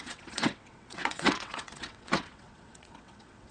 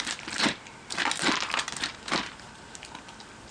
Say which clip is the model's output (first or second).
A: first